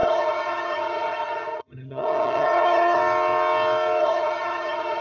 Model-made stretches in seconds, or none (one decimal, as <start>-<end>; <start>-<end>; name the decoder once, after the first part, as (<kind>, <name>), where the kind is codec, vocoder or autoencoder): 0.0-3.0 (vocoder, HiFi-GAN); 4.0-5.0